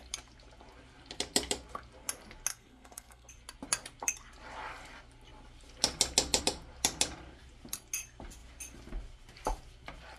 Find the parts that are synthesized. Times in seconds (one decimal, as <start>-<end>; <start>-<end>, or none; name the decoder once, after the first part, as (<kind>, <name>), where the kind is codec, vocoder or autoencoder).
2.5-3.3 (codec, SNAC)